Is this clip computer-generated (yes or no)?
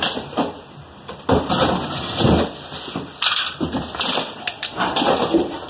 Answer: no